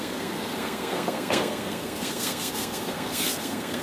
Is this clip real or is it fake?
fake